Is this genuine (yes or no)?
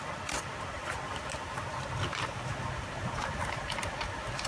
yes